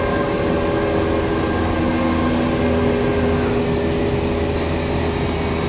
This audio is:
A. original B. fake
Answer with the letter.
A